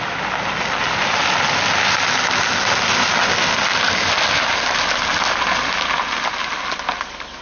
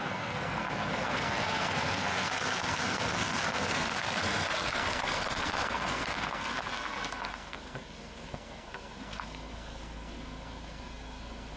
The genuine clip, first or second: first